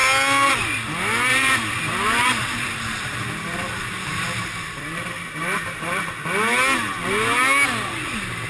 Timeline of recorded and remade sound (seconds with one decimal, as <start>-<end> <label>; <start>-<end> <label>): 0.0-1.3 recorded; 1.3-1.8 remade; 1.8-2.2 recorded; 2.2-6.1 remade; 6.1-8.5 recorded